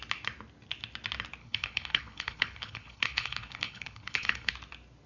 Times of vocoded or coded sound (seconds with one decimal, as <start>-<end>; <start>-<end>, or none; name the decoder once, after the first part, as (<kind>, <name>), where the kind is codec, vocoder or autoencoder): 1.4-4.5 (codec, HILCodec)